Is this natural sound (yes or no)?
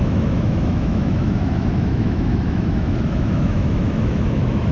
no